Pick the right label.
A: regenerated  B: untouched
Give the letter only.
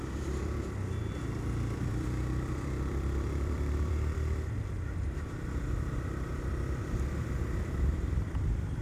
A